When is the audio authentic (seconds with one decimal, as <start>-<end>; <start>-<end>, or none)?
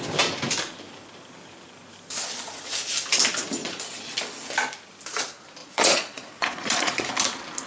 0.0-3.6; 4.2-5.6; 7.1-7.7